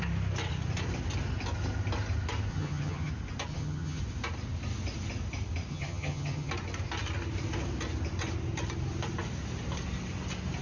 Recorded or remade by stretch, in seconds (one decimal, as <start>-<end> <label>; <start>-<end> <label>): 0.0-2.5 recorded; 2.5-3.1 remade; 3.1-3.5 recorded; 3.5-4.0 remade; 4.0-5.7 recorded; 5.7-6.5 remade; 6.5-10.6 recorded